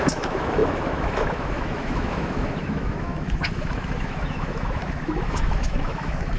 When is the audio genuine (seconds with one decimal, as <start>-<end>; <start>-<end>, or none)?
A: none